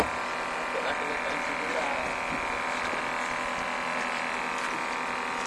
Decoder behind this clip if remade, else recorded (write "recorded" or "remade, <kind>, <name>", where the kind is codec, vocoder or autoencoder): recorded